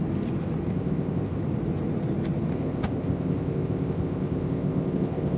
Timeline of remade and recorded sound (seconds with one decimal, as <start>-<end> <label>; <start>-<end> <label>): 0.0-0.7 recorded; 0.7-1.4 remade; 1.4-2.5 recorded; 2.5-5.4 remade